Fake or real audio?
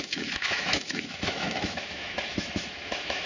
fake